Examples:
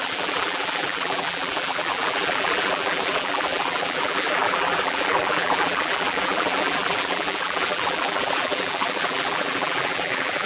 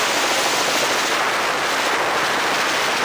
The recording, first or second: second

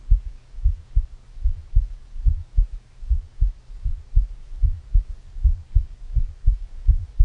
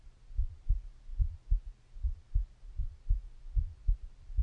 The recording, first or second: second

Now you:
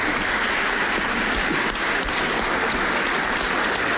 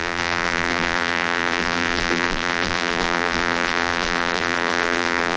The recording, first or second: first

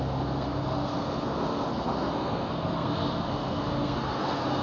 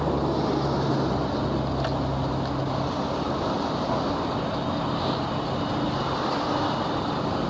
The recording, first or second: second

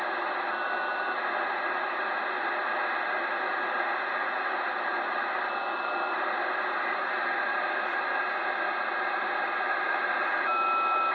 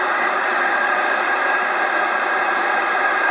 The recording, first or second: first